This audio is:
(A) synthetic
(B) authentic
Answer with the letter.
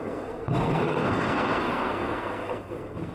A